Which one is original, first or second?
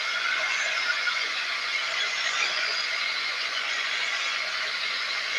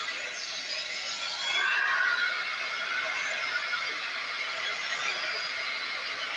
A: second